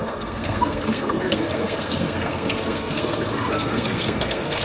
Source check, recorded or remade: remade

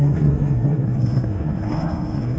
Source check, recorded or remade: remade